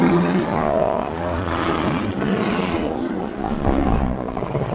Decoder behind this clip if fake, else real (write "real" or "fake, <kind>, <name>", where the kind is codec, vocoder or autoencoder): fake, vocoder, Vocos